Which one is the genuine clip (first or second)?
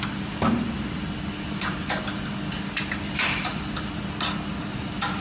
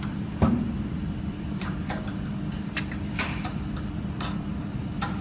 first